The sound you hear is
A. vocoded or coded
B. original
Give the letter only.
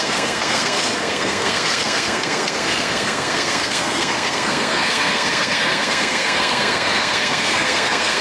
A